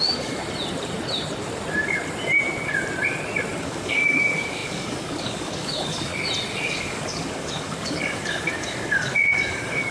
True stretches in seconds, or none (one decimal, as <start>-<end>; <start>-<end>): 0.4-3.6; 6.1-6.6